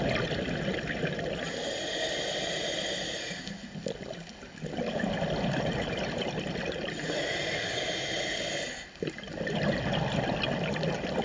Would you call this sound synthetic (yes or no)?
no